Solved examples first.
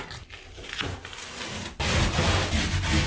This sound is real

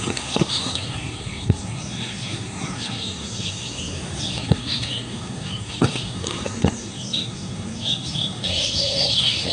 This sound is fake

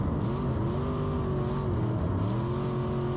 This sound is real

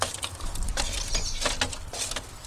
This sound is real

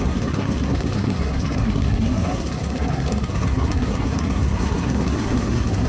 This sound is fake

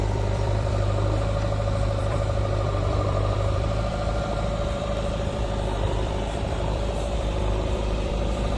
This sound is fake